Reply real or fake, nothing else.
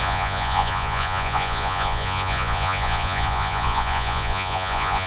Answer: fake